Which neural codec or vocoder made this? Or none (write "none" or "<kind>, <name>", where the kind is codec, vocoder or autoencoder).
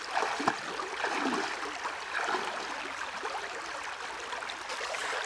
none